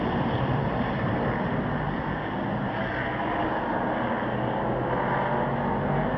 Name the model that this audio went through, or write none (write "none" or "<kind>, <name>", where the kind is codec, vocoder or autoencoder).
none